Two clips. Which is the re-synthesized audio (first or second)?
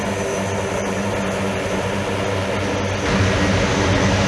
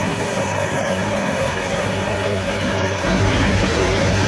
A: second